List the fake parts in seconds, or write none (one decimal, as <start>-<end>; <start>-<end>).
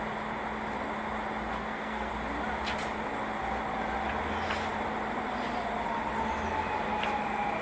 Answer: 1.5-2.1